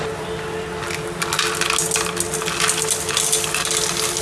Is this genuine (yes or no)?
yes